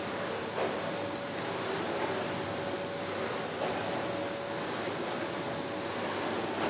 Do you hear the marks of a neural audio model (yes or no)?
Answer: no